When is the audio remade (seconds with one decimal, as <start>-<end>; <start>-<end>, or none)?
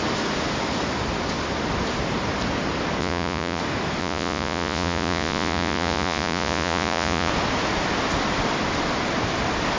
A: 3.0-3.6; 4.0-7.3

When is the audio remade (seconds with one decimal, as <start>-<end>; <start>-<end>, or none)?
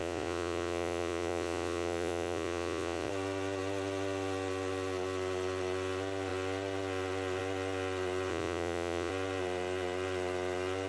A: 0.0-3.1; 8.3-9.1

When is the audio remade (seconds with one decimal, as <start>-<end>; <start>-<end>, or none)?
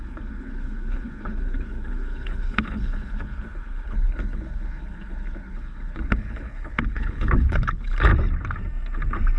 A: 0.0-8.1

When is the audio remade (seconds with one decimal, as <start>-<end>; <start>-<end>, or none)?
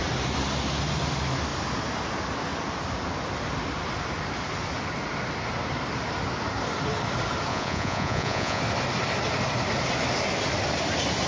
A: 7.5-8.6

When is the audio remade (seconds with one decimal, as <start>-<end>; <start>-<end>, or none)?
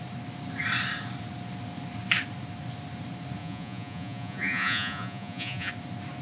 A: 3.4-5.7